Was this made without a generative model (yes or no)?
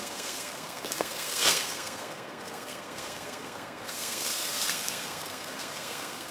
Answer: no